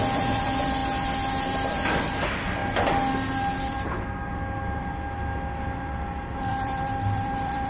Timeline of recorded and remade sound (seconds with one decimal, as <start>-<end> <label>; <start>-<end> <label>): 0.0-2.6 remade; 2.6-6.4 recorded; 6.4-7.7 remade